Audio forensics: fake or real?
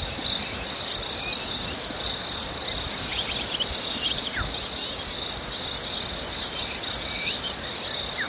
real